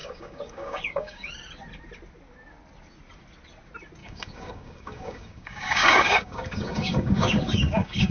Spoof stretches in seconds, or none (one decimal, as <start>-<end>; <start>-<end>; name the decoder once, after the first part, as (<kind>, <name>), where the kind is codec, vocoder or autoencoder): 0.0-1.3 (codec, DAC); 4.0-8.1